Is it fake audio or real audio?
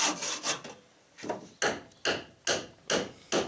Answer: real